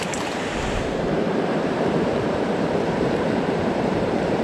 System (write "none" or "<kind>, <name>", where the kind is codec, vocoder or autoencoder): vocoder, BigVGAN v2